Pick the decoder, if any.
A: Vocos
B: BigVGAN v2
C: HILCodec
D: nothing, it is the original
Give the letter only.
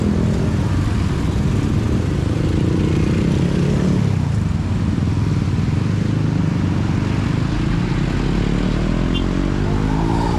D